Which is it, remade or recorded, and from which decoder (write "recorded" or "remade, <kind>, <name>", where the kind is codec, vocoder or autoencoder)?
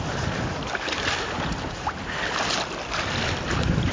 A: remade, vocoder, BigVGAN v2